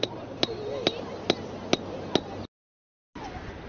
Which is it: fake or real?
real